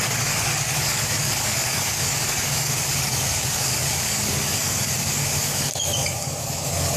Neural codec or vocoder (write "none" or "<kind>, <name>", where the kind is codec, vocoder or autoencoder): codec, DAC